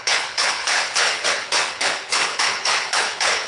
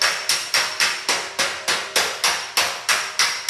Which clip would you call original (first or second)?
second